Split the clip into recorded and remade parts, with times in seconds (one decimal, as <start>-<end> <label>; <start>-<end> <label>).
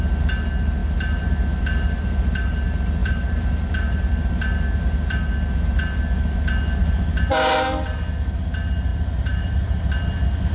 0.0-3.0 recorded; 3.0-4.0 remade; 4.0-8.9 recorded; 8.9-9.8 remade; 9.8-10.5 recorded